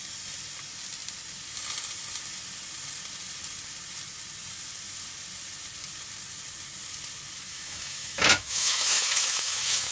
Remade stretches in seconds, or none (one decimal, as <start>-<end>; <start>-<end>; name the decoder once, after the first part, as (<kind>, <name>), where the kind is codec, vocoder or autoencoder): 7.5-9.9 (autoencoder, DAC-VAE)